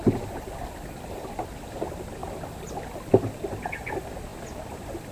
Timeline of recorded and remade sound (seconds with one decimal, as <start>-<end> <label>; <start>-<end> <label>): 0.0-5.1 recorded

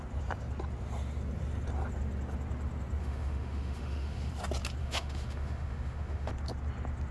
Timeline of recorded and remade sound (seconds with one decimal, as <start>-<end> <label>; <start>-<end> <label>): 0.0-3.0 recorded; 3.0-4.3 remade; 4.3-4.8 recorded; 4.8-6.3 remade; 6.3-7.1 recorded

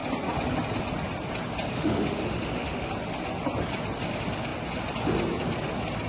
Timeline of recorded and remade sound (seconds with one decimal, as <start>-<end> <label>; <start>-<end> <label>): 0.0-1.7 recorded; 1.7-2.9 remade; 2.9-6.1 recorded

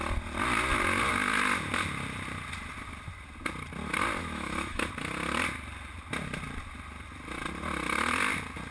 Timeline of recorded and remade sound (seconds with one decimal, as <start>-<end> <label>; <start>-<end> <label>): 0.0-4.2 recorded; 4.2-4.9 remade; 4.9-8.7 recorded

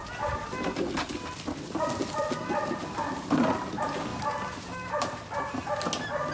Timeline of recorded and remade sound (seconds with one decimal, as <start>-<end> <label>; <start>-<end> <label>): 0.0-6.3 recorded

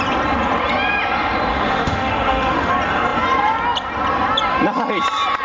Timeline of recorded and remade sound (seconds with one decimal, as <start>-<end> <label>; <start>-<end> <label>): 0.0-1.5 recorded; 1.5-2.7 remade; 2.7-5.4 recorded

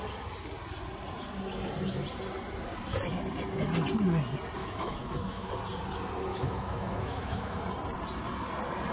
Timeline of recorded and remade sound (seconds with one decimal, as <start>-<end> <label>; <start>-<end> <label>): 0.0-4.6 recorded; 4.6-5.5 remade; 5.5-6.3 recorded; 6.3-7.6 remade; 7.6-8.9 recorded

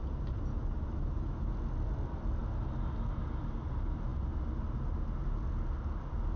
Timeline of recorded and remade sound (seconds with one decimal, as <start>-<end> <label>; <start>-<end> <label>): 0.0-0.5 recorded; 0.5-1.5 remade; 1.5-6.4 recorded